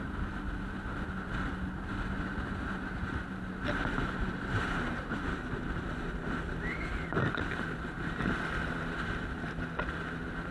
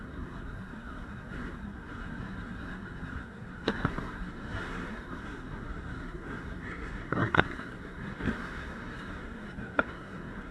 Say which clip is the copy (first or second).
second